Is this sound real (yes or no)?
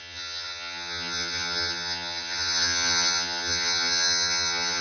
no